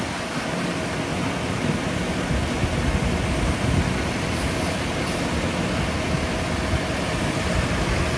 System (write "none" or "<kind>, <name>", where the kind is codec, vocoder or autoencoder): none